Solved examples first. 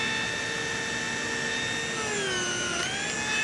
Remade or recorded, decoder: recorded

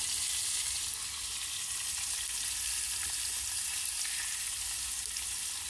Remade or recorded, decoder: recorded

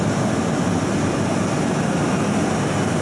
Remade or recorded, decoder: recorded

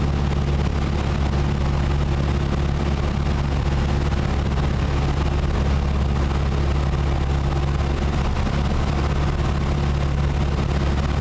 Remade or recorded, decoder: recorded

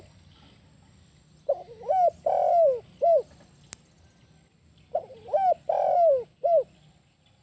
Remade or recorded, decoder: recorded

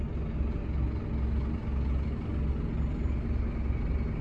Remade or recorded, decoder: recorded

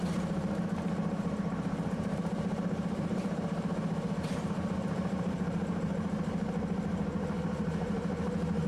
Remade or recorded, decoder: remade, vocoder, BigVGAN v2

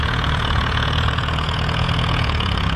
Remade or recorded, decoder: remade, vocoder, Vocos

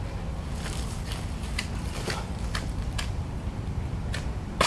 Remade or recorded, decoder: remade, vocoder, BigVGAN v2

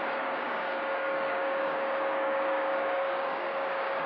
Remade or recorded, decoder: remade, codec, DAC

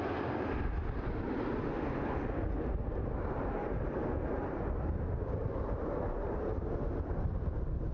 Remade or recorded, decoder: recorded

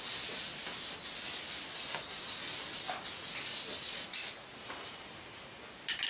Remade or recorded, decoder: recorded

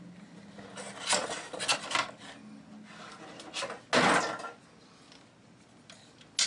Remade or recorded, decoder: recorded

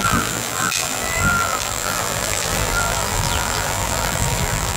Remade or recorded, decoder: remade, vocoder, BigVGAN v2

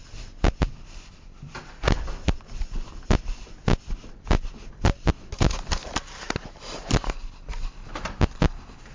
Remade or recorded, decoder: recorded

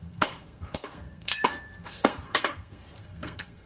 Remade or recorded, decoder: remade, codec, SNAC